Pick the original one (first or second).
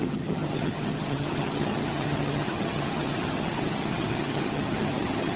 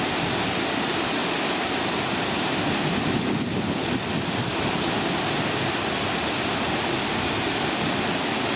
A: second